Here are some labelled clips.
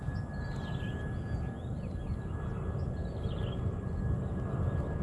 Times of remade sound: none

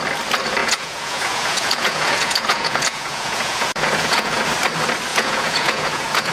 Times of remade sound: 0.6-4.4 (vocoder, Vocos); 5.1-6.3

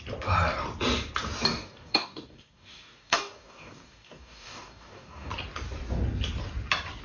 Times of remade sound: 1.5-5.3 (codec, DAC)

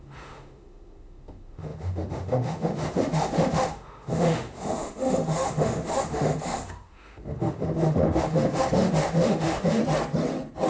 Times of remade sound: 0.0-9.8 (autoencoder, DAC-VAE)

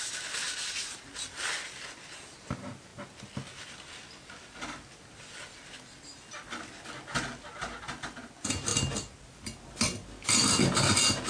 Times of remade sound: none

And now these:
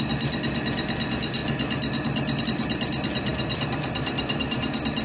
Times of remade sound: 3.3-4.4 (vocoder, BigVGAN v2)

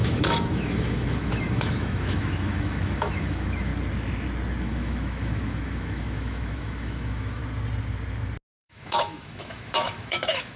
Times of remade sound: 0.0-3.7 (autoencoder, DAC-VAE); 4.6-7.4; 8.6-10.6